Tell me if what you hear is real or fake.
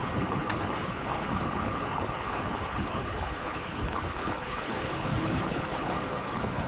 fake